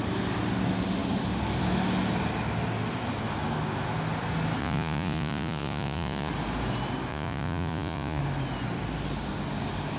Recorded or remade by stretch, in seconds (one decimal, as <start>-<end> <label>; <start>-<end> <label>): 0.0-4.6 recorded; 4.6-6.3 remade; 6.3-7.1 recorded; 7.1-8.2 remade; 8.2-10.0 recorded